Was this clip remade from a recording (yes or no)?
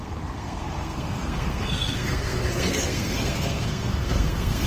yes